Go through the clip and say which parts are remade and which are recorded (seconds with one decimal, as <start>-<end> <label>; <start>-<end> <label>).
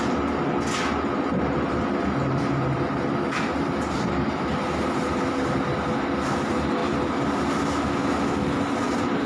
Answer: 0.0-9.3 recorded